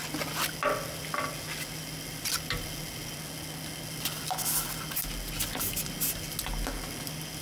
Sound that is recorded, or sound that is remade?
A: recorded